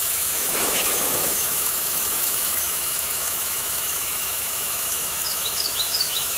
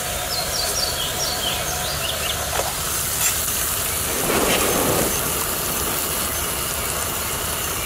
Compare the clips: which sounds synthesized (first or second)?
first